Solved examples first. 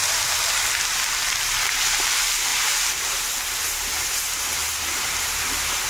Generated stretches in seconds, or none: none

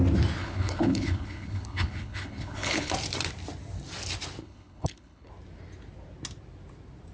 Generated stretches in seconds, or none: 0.4-2.9 (codec, HILCodec); 4.4-5.3

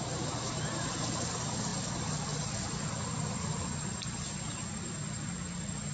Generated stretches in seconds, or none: none

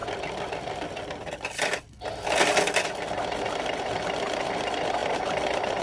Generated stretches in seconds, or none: none

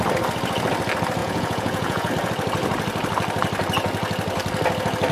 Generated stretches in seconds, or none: 1.2-2.1 (vocoder, Vocos)

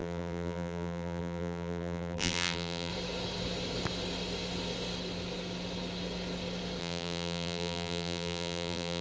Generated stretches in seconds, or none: 0.0-2.9 (vocoder, BigVGAN v2); 6.8-9.0